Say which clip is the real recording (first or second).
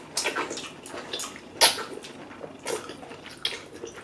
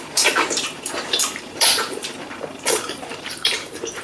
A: first